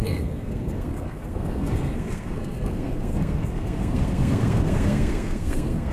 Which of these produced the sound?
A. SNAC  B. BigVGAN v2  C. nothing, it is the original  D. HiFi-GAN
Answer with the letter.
A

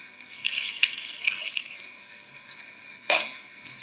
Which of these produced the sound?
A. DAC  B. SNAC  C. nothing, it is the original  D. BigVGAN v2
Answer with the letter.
B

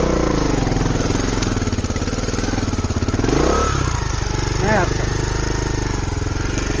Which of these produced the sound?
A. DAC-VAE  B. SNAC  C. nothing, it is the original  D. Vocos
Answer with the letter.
C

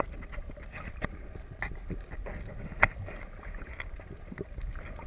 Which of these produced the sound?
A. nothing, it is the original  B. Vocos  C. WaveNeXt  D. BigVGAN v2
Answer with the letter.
A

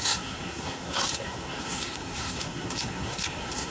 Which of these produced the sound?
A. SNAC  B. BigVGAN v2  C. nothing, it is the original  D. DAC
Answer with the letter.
A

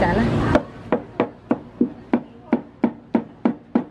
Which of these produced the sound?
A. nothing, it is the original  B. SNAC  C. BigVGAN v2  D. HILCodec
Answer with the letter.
A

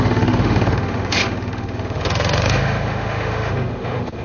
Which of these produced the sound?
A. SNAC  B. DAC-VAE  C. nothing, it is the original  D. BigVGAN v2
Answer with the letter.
B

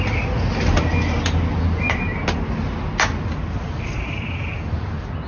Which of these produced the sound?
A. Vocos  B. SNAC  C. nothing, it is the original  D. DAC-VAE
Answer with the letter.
C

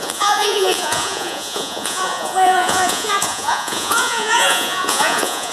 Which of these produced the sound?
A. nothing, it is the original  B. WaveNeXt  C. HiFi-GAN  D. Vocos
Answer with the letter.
D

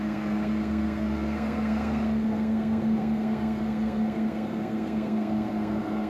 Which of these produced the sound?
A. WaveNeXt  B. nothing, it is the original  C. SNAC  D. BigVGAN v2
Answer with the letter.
C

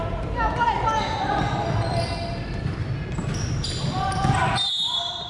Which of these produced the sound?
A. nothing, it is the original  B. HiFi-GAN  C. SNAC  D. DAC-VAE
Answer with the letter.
A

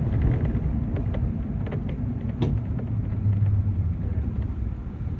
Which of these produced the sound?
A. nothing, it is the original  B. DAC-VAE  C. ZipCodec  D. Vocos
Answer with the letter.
A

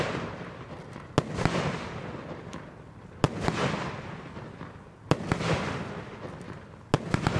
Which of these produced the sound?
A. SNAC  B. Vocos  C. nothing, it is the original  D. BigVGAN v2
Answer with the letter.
C